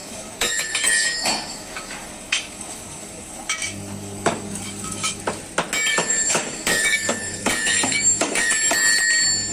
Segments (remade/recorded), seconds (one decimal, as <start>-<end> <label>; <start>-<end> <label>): 0.0-5.2 remade; 5.2-5.9 recorded; 5.9-8.5 remade; 8.5-9.5 recorded